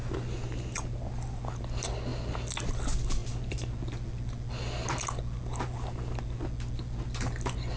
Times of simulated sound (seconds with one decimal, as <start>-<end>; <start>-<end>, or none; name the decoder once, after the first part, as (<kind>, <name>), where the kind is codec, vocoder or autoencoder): none